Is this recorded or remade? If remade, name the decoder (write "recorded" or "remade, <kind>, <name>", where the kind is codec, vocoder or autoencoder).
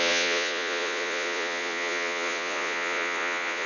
remade, vocoder, Vocos